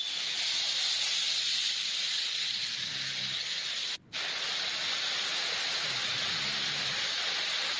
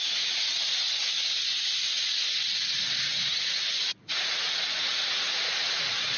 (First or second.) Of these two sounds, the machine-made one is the second